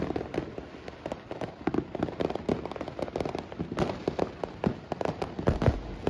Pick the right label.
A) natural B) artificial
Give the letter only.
A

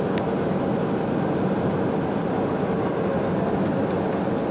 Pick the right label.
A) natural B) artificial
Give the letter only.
A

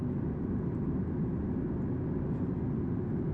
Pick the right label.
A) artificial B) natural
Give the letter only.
B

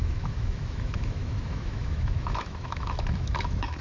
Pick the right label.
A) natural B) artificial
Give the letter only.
B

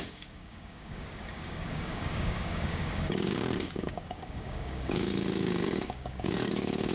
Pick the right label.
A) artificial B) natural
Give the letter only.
A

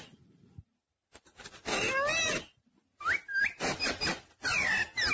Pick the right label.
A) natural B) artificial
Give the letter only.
A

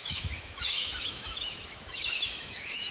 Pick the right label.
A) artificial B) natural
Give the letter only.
A